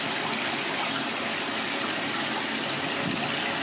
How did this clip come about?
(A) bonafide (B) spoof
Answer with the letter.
A